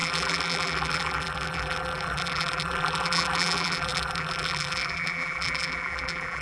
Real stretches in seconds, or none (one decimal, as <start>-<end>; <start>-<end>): none